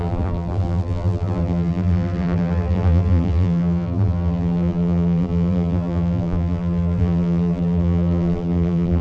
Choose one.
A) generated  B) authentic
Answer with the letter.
A